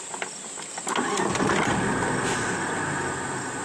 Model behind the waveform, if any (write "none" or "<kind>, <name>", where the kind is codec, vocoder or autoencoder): none